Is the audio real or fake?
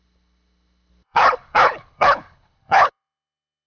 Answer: fake